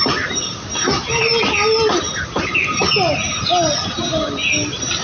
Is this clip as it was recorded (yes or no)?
yes